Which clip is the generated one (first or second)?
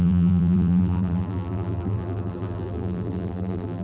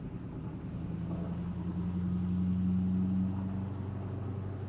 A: first